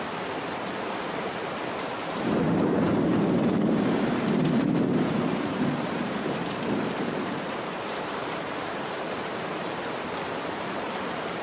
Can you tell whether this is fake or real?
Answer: fake